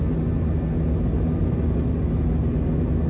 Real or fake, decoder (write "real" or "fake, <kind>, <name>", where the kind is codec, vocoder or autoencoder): real